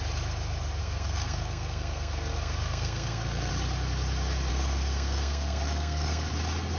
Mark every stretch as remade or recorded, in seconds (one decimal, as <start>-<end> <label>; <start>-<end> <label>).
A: 0.0-0.8 recorded; 0.8-3.5 remade; 3.5-4.5 recorded; 4.5-6.3 remade; 6.3-6.8 recorded